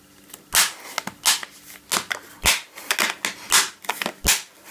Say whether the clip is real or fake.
real